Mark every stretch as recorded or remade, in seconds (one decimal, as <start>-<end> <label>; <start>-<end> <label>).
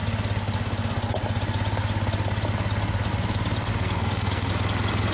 0.0-3.7 recorded; 3.7-4.5 remade; 4.5-5.1 recorded